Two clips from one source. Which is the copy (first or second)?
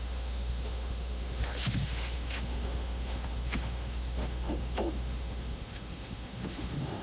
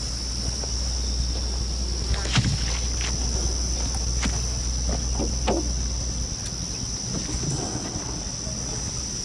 first